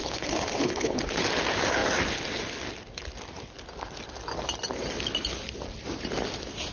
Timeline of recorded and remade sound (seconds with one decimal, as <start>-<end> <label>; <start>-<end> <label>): 0.0-1.0 remade; 1.0-6.7 recorded